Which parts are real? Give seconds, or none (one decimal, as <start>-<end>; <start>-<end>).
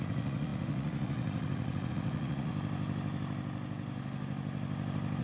2.5-5.2